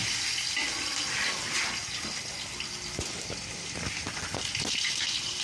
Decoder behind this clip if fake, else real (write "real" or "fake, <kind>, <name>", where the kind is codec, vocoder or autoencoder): real